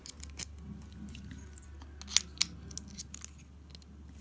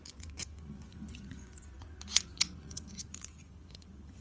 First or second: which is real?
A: first